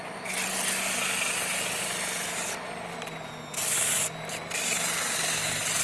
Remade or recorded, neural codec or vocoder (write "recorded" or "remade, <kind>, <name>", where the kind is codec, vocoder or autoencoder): recorded